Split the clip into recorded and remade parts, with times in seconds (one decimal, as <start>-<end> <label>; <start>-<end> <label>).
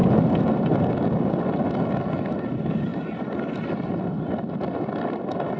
0.0-5.6 recorded